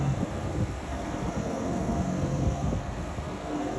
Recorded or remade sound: remade